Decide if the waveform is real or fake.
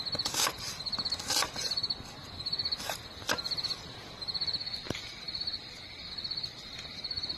real